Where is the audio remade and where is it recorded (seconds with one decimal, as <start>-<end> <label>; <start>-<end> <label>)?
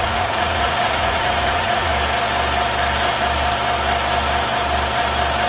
0.0-1.9 remade; 1.9-5.5 recorded